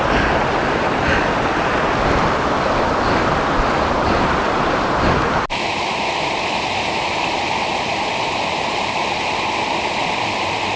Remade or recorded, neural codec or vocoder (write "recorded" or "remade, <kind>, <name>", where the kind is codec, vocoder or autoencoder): recorded